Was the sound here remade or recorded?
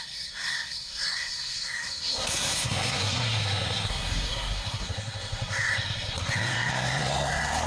remade